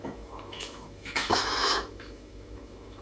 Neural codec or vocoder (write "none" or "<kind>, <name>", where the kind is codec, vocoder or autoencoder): autoencoder, DAC-VAE